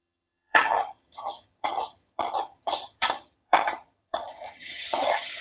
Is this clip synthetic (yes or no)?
yes